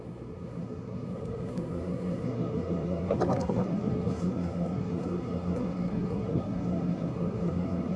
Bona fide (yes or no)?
no